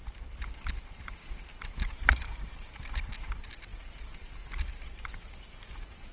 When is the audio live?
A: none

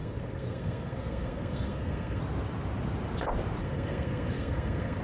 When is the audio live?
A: 2.2-3.6